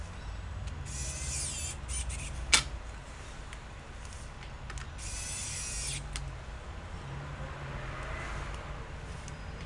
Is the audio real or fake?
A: real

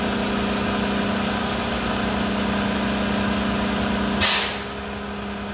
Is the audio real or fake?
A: real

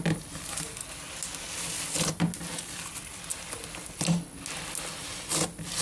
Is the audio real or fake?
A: real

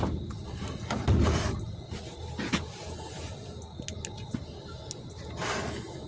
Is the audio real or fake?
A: real